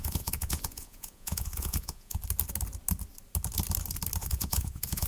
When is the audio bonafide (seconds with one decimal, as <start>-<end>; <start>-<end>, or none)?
2.2-4.2